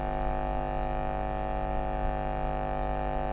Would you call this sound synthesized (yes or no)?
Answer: yes